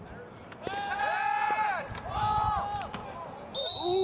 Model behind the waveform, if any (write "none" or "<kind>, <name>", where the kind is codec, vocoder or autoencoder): none